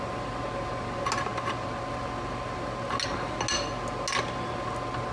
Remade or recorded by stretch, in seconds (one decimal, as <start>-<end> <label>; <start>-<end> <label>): 0.0-5.1 recorded